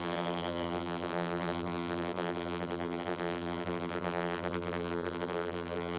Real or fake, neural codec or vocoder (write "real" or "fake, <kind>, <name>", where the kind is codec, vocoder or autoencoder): fake, vocoder, BigVGAN v2